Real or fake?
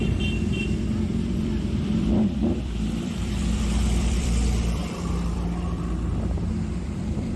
fake